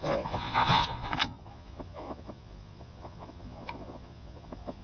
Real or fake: fake